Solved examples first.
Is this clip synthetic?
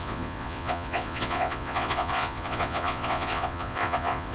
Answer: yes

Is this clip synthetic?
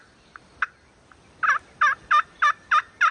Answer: yes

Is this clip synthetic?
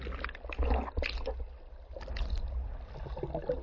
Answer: no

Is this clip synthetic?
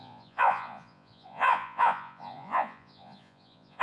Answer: yes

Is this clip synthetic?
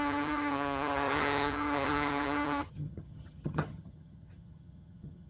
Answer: yes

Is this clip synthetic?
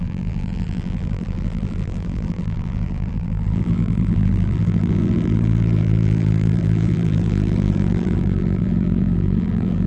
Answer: yes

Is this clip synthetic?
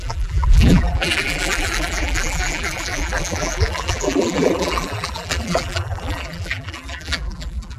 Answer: yes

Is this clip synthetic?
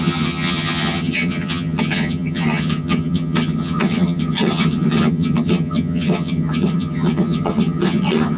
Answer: yes